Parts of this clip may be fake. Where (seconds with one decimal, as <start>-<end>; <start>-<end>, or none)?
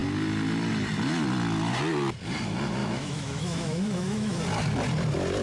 2.8-4.4